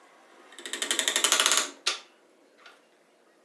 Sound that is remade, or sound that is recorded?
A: recorded